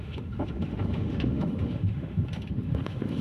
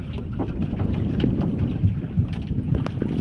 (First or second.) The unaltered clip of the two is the second